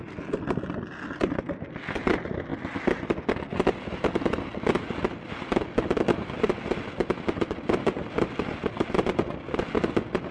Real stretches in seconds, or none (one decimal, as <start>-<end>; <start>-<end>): 0.0-10.3

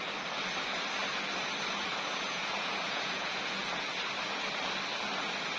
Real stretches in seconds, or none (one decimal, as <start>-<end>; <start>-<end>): 0.0-1.8; 4.0-5.6

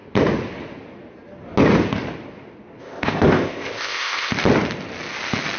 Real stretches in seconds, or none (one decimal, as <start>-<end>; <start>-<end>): 0.0-2.8; 4.3-5.6

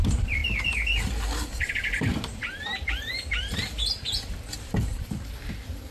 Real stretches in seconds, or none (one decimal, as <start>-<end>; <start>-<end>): 0.0-2.1; 3.1-5.9

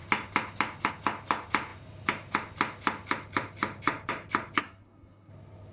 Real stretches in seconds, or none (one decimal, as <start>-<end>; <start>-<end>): 0.0-4.6; 5.3-5.7

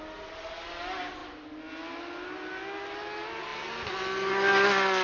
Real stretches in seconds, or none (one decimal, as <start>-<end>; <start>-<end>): 0.0-5.0

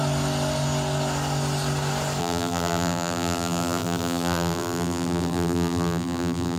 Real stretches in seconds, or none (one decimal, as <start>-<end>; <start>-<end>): 0.0-2.2

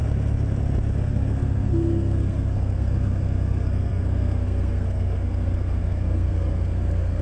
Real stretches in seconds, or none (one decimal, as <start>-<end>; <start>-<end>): 0.0-1.0